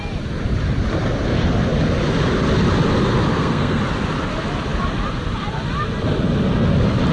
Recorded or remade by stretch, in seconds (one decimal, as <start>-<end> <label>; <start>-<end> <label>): 0.0-3.3 recorded; 3.3-3.8 remade; 3.8-7.1 recorded